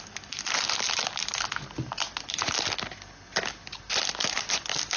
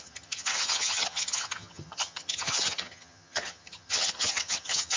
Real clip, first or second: first